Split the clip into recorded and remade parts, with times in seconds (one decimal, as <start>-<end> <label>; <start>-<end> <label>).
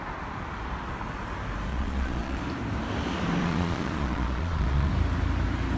0.0-1.7 recorded; 1.7-2.4 remade; 2.4-3.4 recorded; 3.4-4.9 remade; 4.9-5.8 recorded